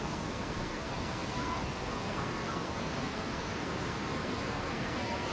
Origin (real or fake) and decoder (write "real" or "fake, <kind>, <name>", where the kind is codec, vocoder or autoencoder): fake, codec, SNAC